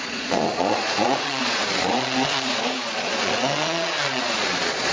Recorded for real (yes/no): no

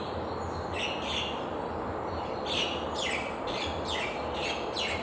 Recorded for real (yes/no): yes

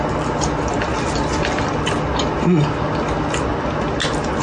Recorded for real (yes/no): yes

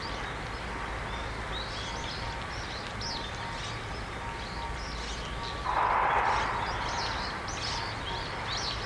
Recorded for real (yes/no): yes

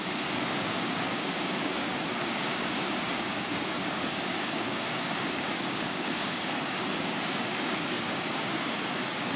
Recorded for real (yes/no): no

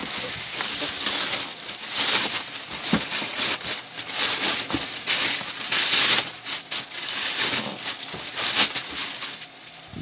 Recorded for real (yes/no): yes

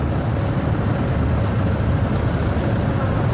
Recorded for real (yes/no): yes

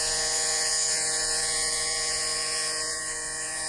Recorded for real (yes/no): no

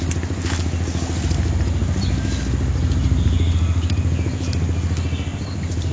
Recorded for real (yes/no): yes